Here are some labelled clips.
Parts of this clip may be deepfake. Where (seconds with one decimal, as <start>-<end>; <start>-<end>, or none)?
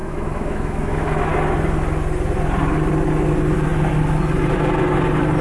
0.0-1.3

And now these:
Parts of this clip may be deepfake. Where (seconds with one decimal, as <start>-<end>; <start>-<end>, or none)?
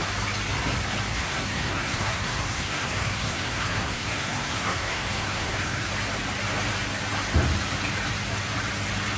1.1-5.9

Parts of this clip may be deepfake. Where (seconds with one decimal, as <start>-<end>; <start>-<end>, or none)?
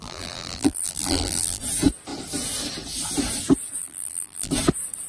0.0-1.6; 3.8-4.5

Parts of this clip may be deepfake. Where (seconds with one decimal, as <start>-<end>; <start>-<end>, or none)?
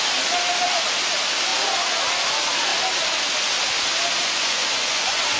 4.2-5.4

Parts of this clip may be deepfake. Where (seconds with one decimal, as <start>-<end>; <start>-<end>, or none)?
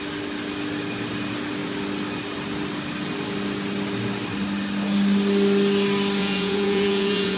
6.2-7.4